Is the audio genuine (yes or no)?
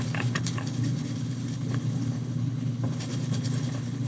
no